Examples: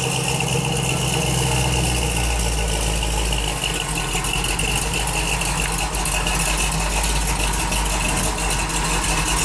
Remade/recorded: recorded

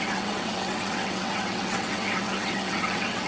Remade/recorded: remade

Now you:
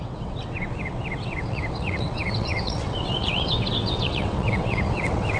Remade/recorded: remade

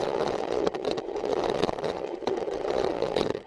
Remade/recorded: remade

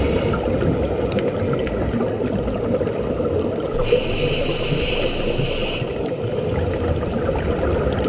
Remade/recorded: recorded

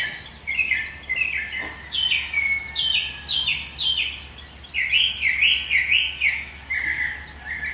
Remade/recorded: recorded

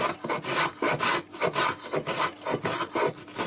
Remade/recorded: recorded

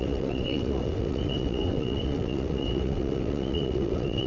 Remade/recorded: remade